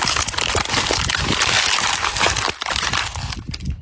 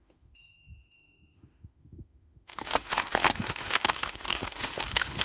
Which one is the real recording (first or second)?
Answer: first